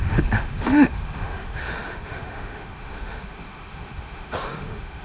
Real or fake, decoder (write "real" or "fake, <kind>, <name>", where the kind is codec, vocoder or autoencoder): fake, autoencoder, DAC-VAE